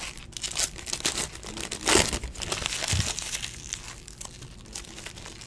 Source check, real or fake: real